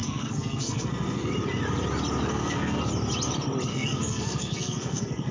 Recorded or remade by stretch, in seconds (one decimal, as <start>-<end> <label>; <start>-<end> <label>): 0.0-1.3 remade; 1.3-2.3 recorded; 2.3-2.8 remade; 2.8-3.7 recorded; 3.7-5.3 remade